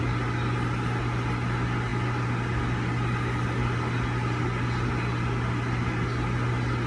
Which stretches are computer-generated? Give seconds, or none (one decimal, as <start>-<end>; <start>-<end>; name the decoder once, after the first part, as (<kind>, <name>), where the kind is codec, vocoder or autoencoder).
none